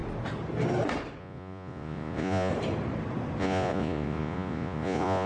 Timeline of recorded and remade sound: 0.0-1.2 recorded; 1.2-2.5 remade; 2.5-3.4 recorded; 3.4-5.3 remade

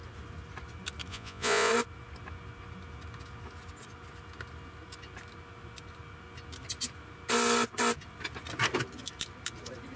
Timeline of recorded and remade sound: 0.0-1.1 recorded; 1.1-1.7 remade; 1.7-10.0 recorded